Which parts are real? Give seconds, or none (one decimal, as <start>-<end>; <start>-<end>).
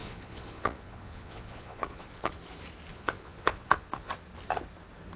2.3-2.9; 4.1-5.2